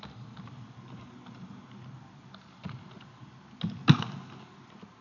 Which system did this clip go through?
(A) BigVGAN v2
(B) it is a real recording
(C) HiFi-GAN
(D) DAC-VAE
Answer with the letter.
B